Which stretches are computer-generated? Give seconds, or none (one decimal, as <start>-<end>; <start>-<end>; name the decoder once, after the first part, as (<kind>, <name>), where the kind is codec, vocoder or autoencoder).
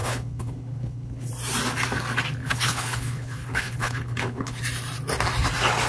0.0-1.3 (codec, HILCodec); 2.4-4.6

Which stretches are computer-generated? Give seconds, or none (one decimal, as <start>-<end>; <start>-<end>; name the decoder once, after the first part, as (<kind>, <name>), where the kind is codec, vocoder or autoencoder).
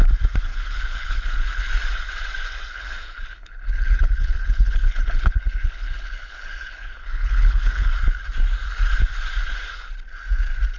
0.5-1.7 (codec, HILCodec); 2.7-7.9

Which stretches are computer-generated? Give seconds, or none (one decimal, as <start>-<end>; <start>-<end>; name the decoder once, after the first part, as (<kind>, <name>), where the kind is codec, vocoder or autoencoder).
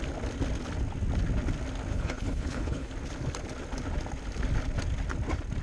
1.9-2.9 (codec, HILCodec)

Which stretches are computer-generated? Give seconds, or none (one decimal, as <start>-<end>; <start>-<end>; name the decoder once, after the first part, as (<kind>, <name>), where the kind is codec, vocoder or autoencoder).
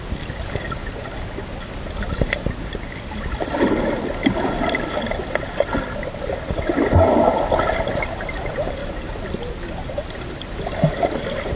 none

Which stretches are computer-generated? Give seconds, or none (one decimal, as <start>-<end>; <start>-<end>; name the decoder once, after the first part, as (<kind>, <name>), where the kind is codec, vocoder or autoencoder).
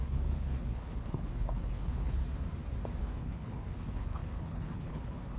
0.0-2.2 (codec, HILCodec); 3.0-5.4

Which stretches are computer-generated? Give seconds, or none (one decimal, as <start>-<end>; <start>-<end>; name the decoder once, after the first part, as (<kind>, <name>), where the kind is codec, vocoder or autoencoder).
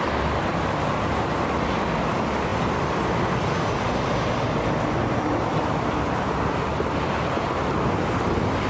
none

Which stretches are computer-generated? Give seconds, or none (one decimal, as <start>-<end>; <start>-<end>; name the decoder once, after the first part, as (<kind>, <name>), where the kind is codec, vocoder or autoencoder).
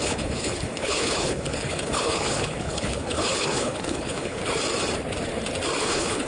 0.0-4.4 (codec, HILCodec); 5.8-6.3